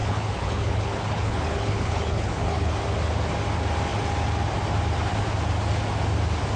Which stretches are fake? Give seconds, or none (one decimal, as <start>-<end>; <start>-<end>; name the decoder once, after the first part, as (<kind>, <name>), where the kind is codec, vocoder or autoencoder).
0.0-2.7 (codec, HILCodec)